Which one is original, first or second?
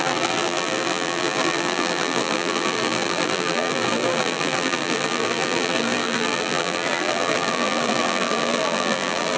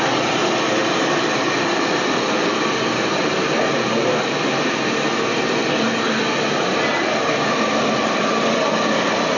second